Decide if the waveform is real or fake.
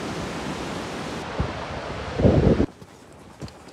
real